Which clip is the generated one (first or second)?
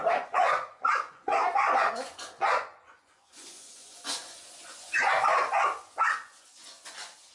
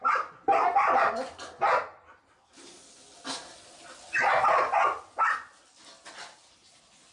first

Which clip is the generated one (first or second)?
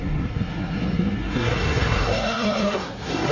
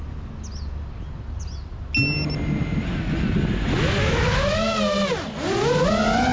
first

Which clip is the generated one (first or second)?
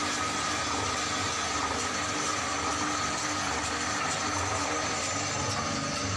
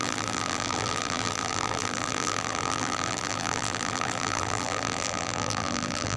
second